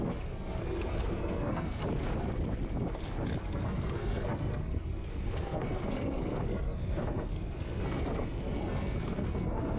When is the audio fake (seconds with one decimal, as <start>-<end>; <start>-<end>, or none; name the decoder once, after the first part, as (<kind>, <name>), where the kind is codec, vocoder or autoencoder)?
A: 0.0-1.8 (codec, SNAC); 3.4-9.8